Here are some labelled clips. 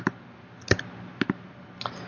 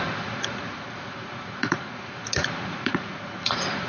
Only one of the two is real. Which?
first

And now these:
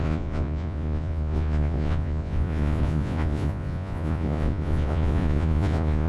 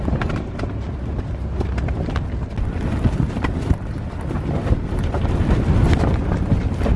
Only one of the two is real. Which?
second